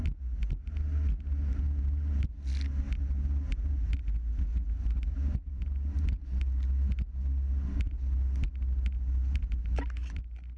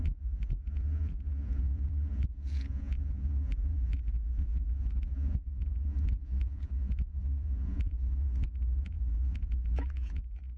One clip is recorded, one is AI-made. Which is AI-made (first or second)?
second